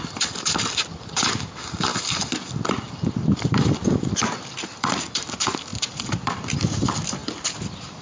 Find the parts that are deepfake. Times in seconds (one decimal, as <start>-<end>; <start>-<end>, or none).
0.0-1.9; 4.1-8.0

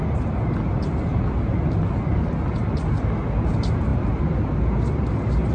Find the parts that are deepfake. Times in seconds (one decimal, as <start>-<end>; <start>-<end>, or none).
none

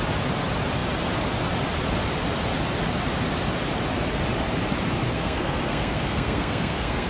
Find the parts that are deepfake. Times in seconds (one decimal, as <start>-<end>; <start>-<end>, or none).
5.1-7.1

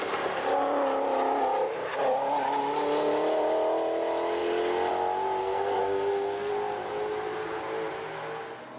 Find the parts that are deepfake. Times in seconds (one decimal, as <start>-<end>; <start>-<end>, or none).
5.4-6.5

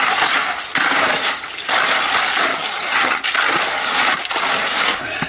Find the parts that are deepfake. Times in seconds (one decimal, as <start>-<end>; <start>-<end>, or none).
2.5-3.2

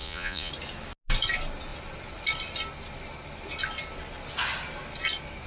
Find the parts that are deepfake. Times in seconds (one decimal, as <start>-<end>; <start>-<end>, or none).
0.0-0.5

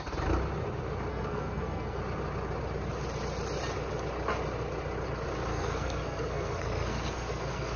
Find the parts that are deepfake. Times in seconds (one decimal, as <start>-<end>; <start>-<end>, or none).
1.1-2.0; 5.5-7.8

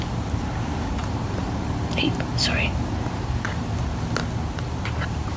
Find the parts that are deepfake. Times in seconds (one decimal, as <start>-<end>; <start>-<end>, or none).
1.0-3.8